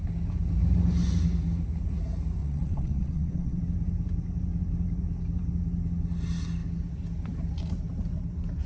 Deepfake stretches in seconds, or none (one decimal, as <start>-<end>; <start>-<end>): 2.4-3.6